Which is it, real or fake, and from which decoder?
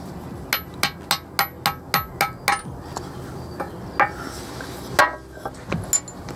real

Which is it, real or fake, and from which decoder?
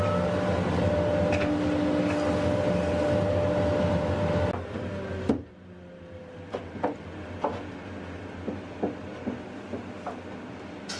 real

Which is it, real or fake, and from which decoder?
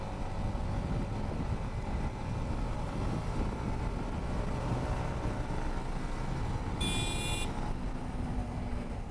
real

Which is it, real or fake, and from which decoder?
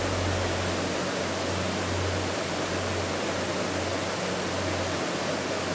real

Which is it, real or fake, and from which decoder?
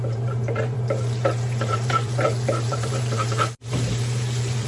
fake, vocoder, BigVGAN v2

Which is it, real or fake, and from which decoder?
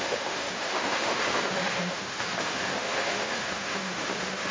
fake, autoencoder, DAC-VAE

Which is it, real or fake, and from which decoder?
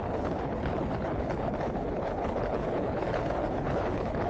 fake, codec, HILCodec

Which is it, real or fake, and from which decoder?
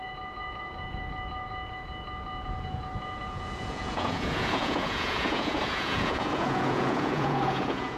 fake, vocoder, Vocos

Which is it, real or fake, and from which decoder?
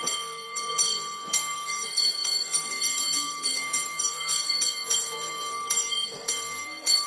fake, codec, SNAC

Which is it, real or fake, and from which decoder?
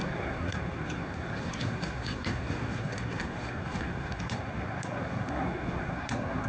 fake, codec, SNAC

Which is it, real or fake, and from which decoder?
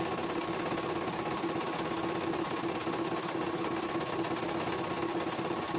real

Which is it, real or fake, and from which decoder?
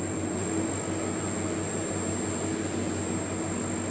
real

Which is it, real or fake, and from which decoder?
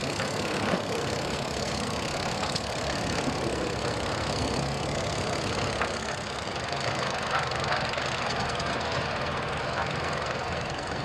fake, codec, SNAC